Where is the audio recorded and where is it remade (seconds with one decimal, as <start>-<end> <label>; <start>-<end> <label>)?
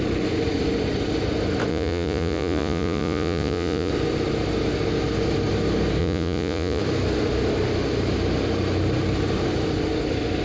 0.0-1.7 recorded; 1.7-3.9 remade; 3.9-6.0 recorded; 6.0-6.8 remade; 6.8-10.4 recorded